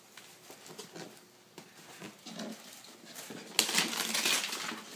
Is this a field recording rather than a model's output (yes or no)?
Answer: yes